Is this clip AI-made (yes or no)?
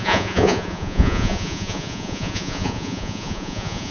yes